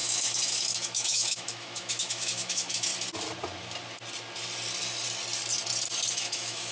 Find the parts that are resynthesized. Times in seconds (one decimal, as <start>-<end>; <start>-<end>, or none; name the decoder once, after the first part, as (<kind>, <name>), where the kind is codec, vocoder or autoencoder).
0.0-2.9 (autoencoder, DAC-VAE); 6.1-6.7